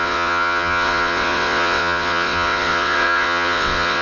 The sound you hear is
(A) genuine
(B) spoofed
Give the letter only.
B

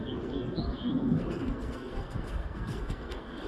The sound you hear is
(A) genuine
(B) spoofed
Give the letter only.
B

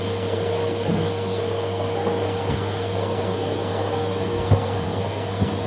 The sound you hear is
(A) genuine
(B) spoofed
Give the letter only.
B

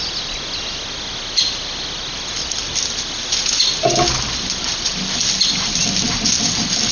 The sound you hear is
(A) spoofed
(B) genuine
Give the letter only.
B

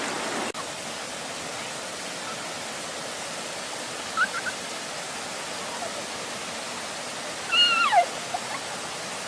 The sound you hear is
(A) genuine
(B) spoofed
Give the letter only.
A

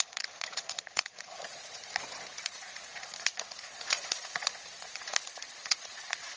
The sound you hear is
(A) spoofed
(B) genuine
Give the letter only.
A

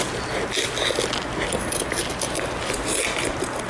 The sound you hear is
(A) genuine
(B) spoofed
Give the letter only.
A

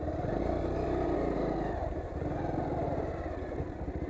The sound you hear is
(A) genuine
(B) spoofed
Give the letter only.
A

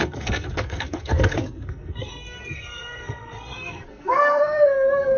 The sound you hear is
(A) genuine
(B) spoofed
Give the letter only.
B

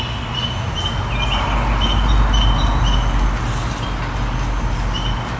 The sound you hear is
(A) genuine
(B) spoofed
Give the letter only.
A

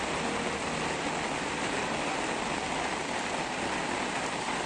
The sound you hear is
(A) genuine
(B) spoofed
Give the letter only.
A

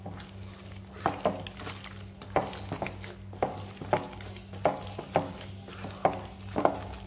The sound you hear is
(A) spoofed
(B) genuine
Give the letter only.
B